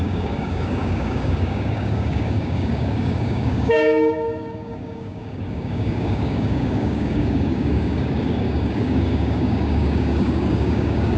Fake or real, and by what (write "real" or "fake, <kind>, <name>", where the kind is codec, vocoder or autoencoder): fake, codec, DAC